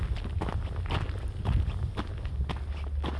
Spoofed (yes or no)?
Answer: no